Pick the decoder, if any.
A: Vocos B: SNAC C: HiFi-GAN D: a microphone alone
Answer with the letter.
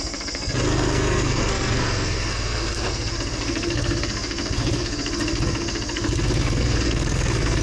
B